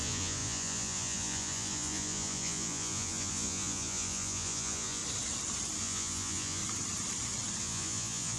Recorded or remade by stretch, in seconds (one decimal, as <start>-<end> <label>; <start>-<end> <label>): 0.0-5.0 remade; 5.0-5.8 recorded; 5.8-6.6 remade; 6.6-7.6 recorded; 7.6-8.4 remade